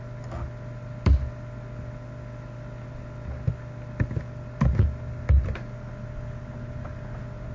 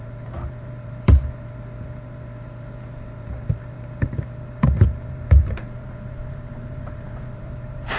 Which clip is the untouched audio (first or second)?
first